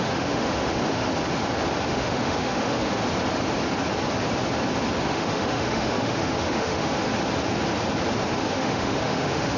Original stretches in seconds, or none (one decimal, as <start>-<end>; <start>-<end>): 1.1-1.9; 3.0-5.0; 7.1-8.3